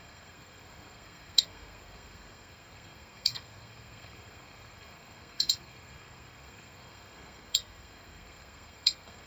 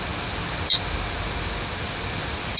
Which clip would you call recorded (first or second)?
second